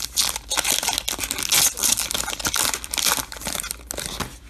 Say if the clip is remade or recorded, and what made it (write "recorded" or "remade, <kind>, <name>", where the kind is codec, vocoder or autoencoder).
recorded